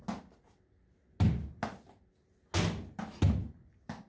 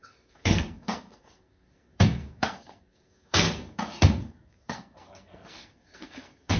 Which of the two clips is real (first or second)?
first